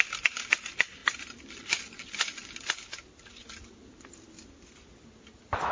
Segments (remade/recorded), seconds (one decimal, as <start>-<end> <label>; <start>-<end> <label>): 0.0-5.7 recorded